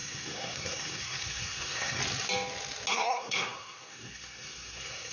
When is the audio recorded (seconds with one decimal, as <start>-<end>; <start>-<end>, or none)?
2.0-2.9